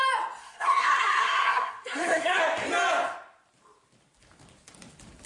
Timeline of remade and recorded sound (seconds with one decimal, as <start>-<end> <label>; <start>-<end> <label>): 0.0-0.4 recorded; 0.4-2.4 remade; 2.4-5.3 recorded